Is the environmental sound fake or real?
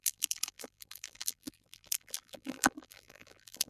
fake